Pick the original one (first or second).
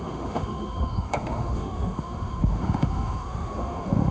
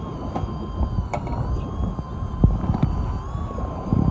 second